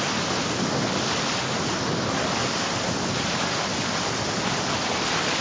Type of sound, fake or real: real